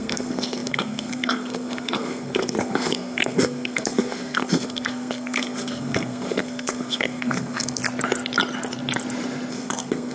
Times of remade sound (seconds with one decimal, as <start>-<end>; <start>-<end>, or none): 0.0-7.8; 9.5-10.1

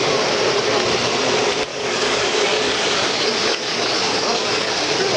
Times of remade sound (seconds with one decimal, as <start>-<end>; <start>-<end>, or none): 1.7-4.7